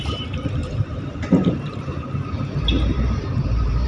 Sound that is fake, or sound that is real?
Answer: fake